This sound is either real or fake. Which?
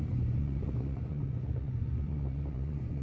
fake